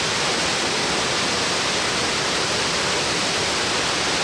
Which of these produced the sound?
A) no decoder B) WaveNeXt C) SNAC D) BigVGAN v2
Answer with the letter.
A